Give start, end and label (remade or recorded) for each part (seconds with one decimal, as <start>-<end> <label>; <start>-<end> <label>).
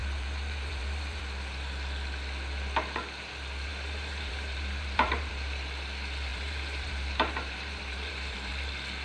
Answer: 0.0-1.2 remade; 1.2-3.7 recorded; 3.7-5.3 remade; 5.3-6.3 recorded; 6.3-8.5 remade; 8.5-9.0 recorded